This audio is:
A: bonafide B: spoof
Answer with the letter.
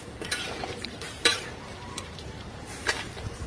B